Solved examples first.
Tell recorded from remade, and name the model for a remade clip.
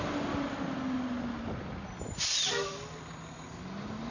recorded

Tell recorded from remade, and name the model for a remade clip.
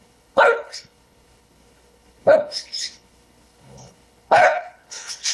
remade, codec, HILCodec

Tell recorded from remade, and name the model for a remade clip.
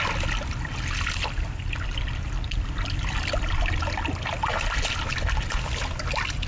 recorded